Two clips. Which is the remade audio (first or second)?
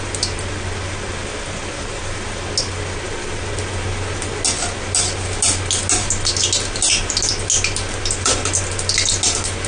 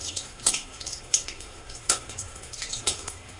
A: second